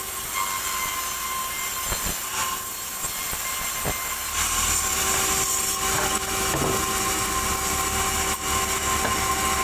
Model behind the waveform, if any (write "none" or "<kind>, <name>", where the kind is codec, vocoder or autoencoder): none